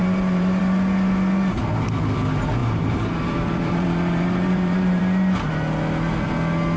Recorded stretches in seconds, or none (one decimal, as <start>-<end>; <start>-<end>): 0.6-2.6; 5.0-6.8